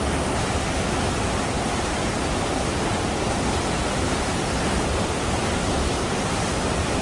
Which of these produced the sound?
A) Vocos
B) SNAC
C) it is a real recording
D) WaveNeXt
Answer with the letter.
C